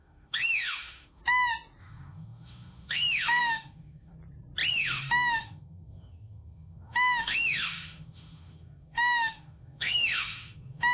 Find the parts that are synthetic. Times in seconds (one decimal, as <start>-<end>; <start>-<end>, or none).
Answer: 0.0-1.2; 1.8-4.1; 4.7-10.9